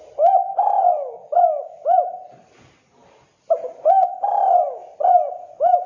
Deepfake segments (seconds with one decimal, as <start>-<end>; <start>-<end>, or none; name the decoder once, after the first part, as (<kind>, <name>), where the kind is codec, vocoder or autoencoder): 0.4-2.1 (autoencoder, DAC-VAE)